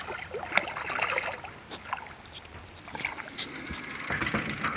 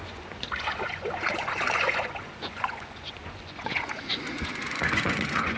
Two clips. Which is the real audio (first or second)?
first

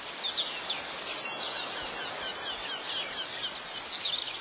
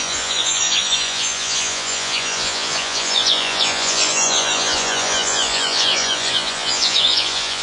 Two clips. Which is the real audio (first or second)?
first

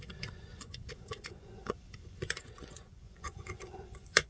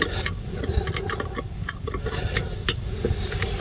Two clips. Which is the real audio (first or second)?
second